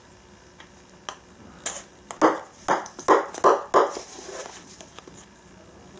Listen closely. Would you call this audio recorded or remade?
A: recorded